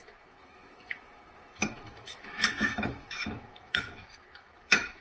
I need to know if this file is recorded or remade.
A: remade